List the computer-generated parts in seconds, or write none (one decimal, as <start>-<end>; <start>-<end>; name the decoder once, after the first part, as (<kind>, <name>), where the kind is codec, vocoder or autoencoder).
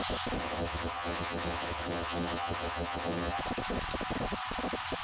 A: 0.4-3.4 (vocoder, HiFi-GAN)